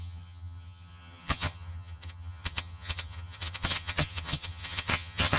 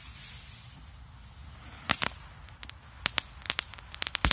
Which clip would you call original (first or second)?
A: second